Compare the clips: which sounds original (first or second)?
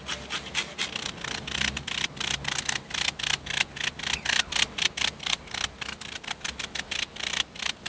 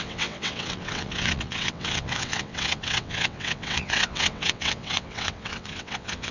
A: first